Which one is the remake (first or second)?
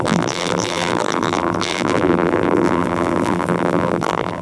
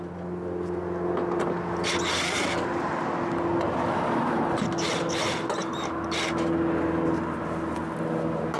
first